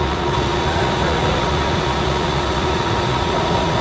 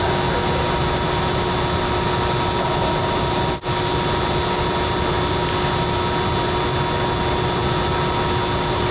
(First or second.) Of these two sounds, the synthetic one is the first